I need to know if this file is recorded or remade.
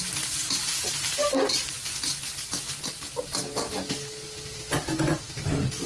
recorded